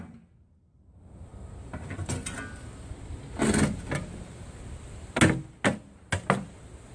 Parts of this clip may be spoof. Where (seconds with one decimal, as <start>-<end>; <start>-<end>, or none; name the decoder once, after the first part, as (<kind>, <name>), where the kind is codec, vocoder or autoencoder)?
none